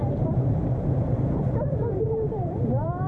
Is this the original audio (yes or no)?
no